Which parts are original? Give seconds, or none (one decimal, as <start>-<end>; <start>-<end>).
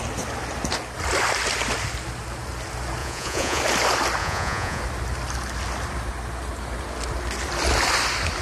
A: 0.0-3.0; 3.6-4.2; 4.8-8.4